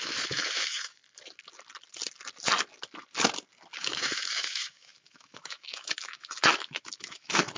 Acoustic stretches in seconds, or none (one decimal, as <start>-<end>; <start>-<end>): 1.0-3.8